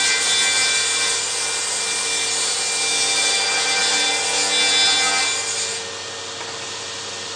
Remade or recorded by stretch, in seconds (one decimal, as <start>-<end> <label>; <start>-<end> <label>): 0.0-7.4 recorded